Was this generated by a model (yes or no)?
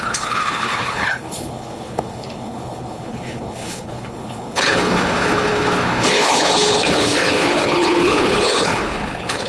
yes